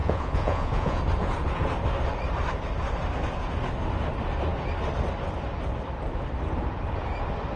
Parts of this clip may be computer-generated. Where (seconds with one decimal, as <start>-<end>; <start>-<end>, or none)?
0.0-1.0